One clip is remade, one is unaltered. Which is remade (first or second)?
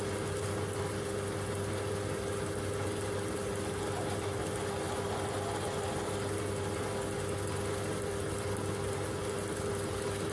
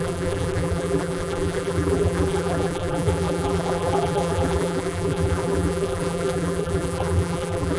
second